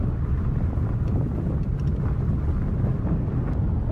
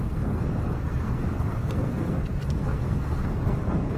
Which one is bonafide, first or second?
first